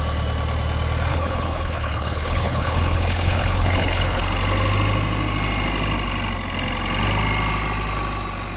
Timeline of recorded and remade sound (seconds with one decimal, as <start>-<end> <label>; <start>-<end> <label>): 0.0-1.1 recorded; 1.1-4.2 remade; 4.2-8.6 recorded